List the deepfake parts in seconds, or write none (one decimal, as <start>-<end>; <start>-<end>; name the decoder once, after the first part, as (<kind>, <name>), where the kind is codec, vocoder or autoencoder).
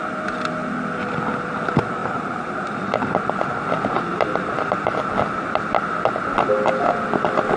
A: 2.0-3.1 (vocoder, BigVGAN v2); 4.1-5.0